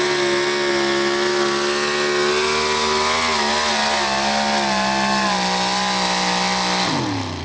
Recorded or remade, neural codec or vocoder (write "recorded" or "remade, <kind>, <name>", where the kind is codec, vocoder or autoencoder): recorded